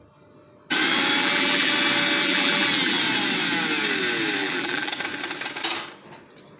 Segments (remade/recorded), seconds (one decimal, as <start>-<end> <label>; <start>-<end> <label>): 0.0-1.2 recorded; 1.2-1.7 remade; 1.7-2.2 recorded; 2.2-3.0 remade; 3.0-4.4 recorded; 4.4-4.9 remade; 4.9-6.6 recorded